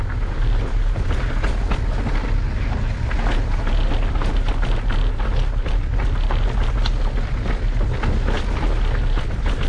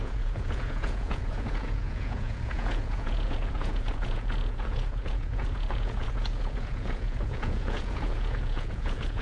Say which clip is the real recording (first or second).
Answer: first